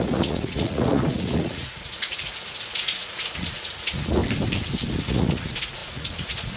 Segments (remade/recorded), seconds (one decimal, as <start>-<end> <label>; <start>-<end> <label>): 0.0-4.2 remade; 4.2-5.0 recorded; 5.0-6.6 remade